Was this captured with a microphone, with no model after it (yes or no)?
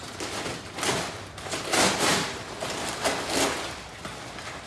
yes